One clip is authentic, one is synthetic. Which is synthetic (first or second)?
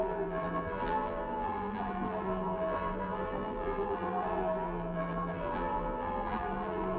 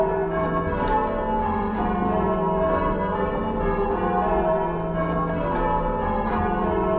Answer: first